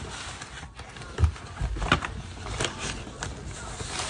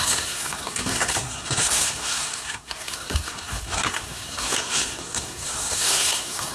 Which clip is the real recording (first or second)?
first